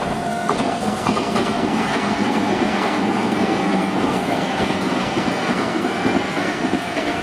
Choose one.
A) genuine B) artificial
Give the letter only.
B